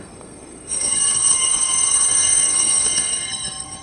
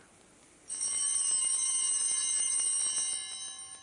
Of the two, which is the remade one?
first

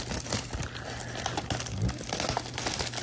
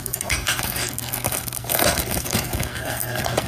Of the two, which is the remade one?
second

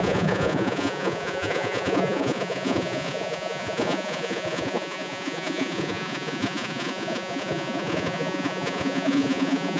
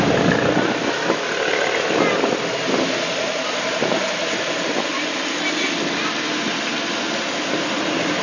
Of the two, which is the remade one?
first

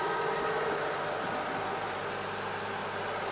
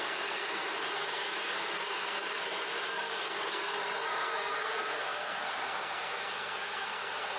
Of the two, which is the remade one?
second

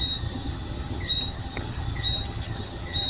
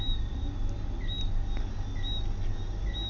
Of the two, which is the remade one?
first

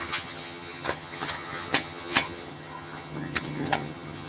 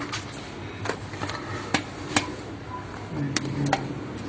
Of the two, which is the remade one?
first